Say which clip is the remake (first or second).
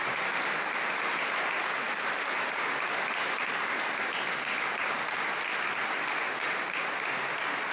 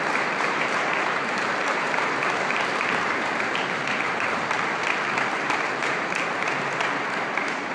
second